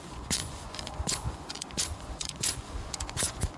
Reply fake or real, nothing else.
fake